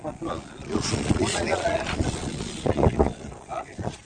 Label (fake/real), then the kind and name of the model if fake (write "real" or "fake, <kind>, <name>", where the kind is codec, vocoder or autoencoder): fake, vocoder, Vocos